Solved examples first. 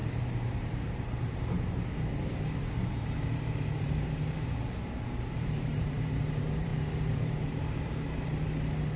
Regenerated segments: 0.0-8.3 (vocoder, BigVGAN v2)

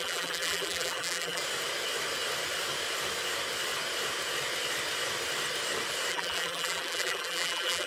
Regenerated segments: 0.0-1.4 (vocoder, BigVGAN v2); 6.1-7.9

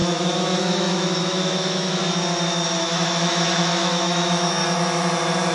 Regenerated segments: 0.0-2.0 (autoencoder, DAC-VAE); 2.8-4.6

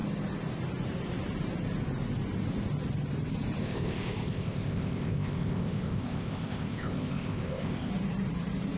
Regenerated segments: 3.6-7.9 (codec, ZipCodec)

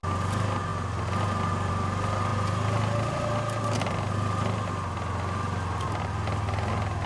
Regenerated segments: none

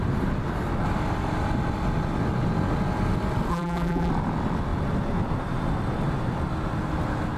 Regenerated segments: 3.5-4.1 (vocoder, BigVGAN v2)